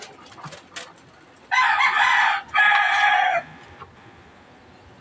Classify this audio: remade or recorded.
recorded